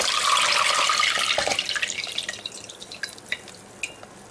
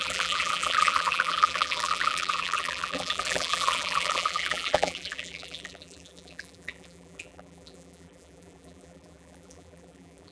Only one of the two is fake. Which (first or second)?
second